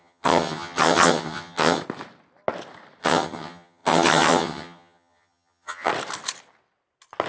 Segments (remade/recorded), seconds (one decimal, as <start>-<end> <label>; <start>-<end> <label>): 0.0-1.8 remade; 1.8-3.0 recorded; 3.0-5.9 remade; 5.9-7.3 recorded